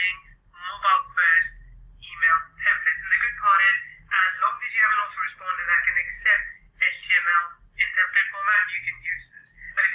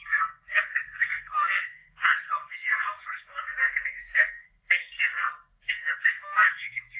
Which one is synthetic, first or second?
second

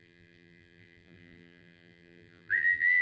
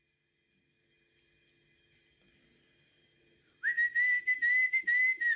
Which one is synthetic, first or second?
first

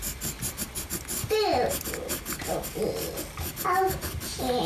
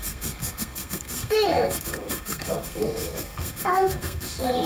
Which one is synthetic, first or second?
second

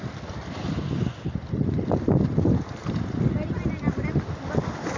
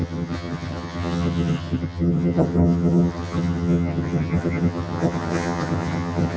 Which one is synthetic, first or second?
second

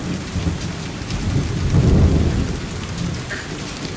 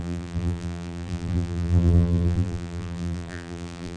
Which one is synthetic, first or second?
second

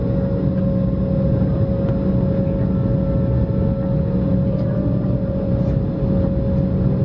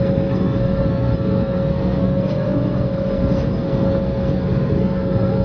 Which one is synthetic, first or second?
second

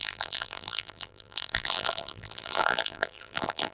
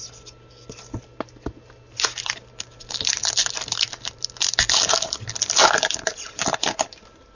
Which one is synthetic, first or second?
first